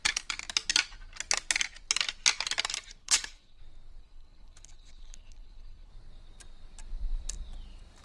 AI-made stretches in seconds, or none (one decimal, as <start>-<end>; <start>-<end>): 3.0-3.6; 4.0-5.9

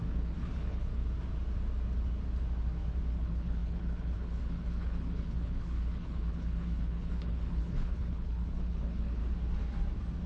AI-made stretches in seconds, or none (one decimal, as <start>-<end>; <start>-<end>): 0.0-1.0; 3.1-9.2

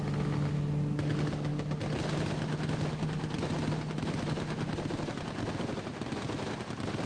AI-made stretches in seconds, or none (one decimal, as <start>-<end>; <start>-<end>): none

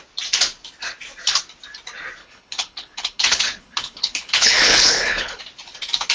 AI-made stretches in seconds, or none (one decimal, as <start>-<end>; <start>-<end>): 2.2-5.4

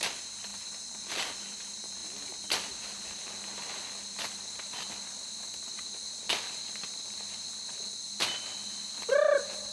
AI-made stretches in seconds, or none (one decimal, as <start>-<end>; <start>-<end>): none

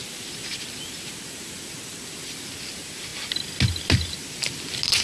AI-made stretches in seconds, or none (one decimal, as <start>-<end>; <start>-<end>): none

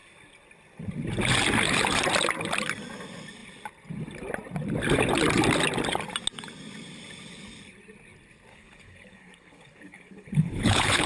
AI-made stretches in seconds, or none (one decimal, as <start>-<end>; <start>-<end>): 8.5-11.1